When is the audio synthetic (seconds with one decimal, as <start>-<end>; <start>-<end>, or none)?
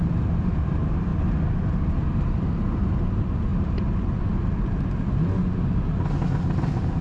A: 0.0-1.1; 2.5-3.5; 6.5-7.0